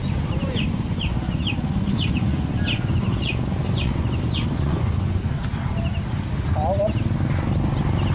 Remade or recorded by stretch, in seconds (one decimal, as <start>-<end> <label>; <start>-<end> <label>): 0.0-0.4 recorded; 0.4-5.3 remade; 5.3-8.1 recorded